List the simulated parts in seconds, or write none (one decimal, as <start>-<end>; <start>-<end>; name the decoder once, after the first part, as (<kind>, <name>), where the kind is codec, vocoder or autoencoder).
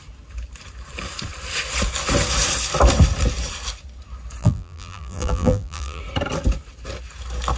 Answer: 4.4-6.0 (vocoder, BigVGAN v2)